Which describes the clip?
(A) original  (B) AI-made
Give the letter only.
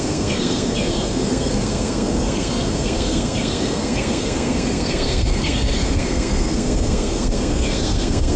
B